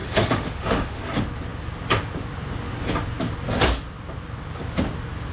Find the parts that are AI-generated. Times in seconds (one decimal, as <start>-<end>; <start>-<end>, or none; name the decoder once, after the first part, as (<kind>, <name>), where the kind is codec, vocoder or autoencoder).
0.0-1.0 (autoencoder, DAC-VAE)